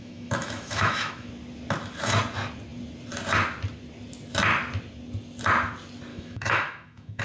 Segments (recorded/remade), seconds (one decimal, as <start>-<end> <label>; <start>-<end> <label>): 0.0-1.3 remade; 1.3-6.1 recorded; 6.1-7.2 remade